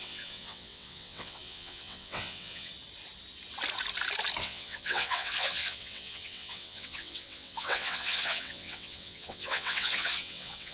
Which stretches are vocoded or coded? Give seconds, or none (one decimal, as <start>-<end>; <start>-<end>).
0.0-2.7; 4.4-10.7